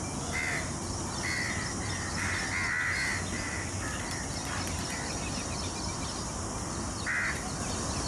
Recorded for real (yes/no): yes